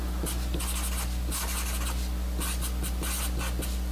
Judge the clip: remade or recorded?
recorded